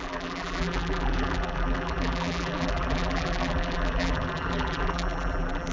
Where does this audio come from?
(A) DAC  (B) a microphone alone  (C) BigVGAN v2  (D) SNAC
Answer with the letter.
C